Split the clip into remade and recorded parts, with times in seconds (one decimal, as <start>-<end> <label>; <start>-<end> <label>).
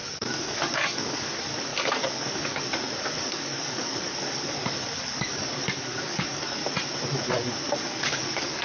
0.0-6.6 remade; 6.6-7.7 recorded; 7.7-8.6 remade